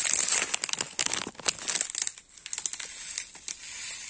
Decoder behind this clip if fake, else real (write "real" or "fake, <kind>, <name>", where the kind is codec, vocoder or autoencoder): real